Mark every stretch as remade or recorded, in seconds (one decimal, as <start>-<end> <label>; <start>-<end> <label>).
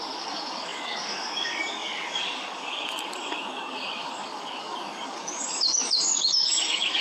0.0-7.0 remade